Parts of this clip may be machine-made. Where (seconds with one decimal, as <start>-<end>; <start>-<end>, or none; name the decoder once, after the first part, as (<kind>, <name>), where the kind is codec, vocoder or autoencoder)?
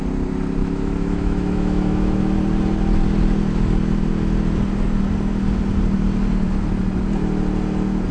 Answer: 0.6-2.2 (autoencoder, DAC-VAE)